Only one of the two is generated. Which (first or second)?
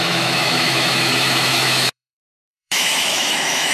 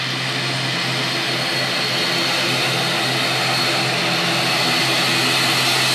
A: first